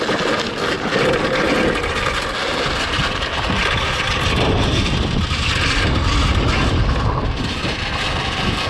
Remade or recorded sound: recorded